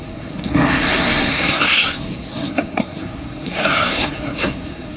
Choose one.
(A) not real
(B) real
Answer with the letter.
A